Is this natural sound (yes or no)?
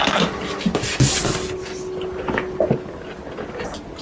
yes